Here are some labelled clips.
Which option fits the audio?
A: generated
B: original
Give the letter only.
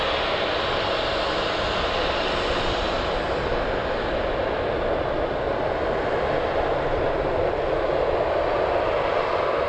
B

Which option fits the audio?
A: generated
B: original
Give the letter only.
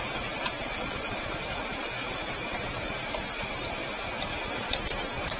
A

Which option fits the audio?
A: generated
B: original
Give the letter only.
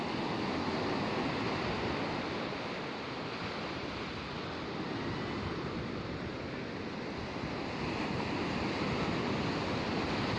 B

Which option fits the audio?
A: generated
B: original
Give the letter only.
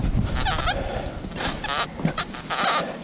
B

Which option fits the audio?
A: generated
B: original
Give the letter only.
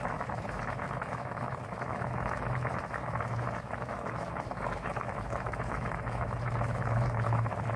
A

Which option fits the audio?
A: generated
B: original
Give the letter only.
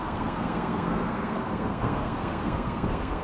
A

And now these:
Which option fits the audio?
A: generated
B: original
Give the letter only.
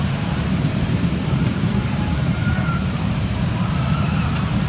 A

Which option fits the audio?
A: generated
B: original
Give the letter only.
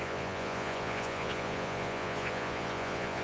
A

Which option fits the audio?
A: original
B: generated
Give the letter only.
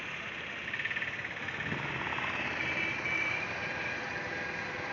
A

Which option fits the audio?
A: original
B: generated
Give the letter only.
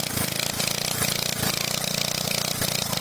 A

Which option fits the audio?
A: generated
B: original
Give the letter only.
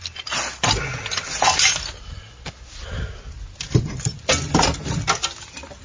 B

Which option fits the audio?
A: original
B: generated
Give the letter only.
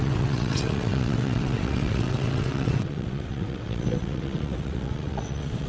B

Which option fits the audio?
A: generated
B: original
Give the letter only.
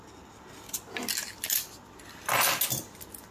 B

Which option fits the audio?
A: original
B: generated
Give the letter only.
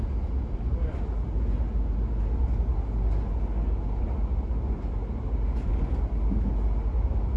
A